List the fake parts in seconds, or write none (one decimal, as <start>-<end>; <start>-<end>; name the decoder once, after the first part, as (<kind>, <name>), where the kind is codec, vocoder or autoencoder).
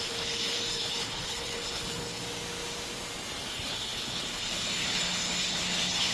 0.0-2.2 (codec, HILCodec); 3.5-6.1